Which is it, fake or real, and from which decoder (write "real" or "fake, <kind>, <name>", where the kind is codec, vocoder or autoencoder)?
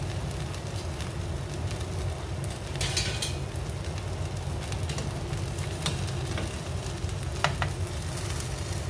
real